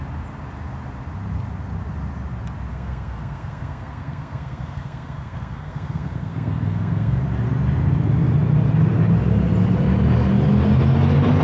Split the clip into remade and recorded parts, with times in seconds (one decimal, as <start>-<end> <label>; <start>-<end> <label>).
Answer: 0.0-2.7 recorded; 2.7-7.2 remade; 7.2-11.4 recorded